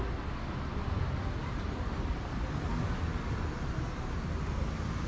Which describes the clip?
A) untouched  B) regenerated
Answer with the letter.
A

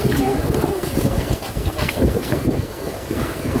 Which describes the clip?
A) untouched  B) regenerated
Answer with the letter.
B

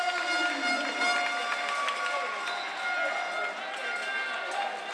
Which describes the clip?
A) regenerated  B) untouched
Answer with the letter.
B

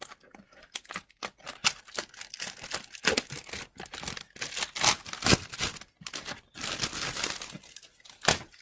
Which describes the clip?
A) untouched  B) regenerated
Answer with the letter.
A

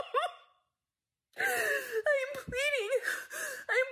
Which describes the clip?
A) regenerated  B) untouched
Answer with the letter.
B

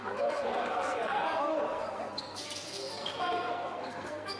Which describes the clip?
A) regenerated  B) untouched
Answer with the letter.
A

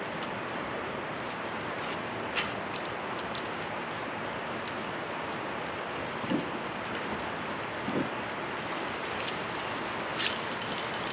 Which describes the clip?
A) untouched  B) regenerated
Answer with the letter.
A